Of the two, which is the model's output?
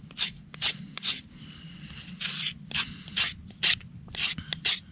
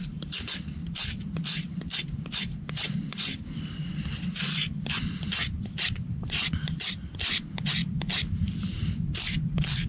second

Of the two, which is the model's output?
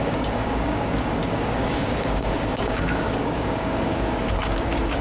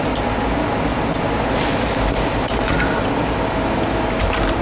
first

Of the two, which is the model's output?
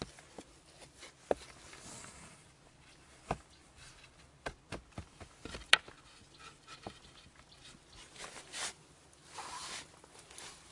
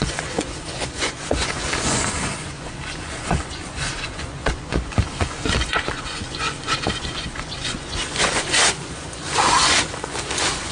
second